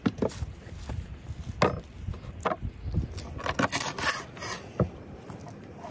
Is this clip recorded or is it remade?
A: recorded